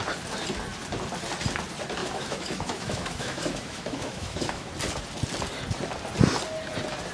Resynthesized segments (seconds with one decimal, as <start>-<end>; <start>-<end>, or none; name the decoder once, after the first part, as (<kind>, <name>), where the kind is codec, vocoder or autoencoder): 2.0-4.7 (autoencoder, DAC-VAE)